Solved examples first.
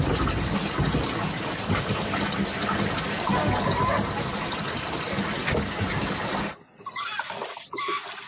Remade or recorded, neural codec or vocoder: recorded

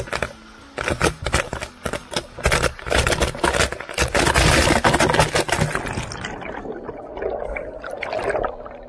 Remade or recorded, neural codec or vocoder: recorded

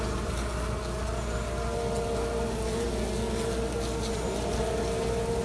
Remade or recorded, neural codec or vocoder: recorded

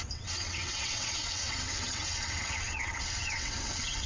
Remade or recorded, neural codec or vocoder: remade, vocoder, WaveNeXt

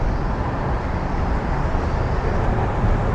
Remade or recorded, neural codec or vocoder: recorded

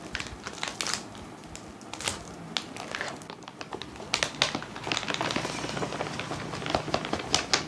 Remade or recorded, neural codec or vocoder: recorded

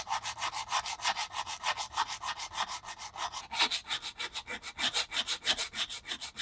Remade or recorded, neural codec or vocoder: recorded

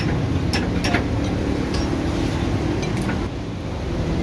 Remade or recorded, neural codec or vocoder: recorded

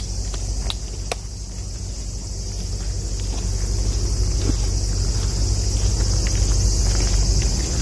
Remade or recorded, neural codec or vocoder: recorded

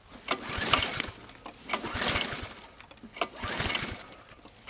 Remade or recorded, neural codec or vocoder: recorded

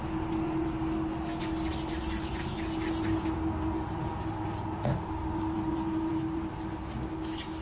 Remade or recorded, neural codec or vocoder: recorded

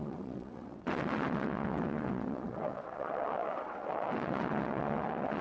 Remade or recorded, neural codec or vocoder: remade, vocoder, WaveNeXt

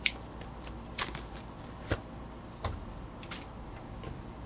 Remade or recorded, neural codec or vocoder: recorded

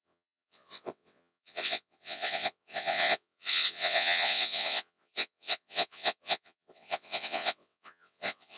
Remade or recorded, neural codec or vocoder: remade, vocoder, WaveNeXt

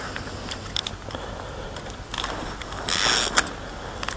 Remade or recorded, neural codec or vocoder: recorded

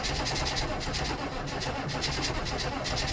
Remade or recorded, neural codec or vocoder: recorded